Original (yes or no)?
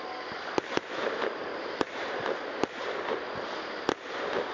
yes